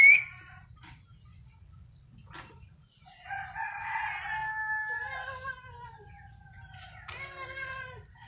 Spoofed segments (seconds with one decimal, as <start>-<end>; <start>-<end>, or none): 0.0-1.3; 6.2-8.3